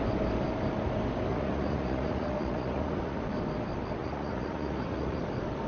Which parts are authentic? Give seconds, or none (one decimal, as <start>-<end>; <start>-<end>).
0.0-1.3; 3.2-4.0; 5.2-5.7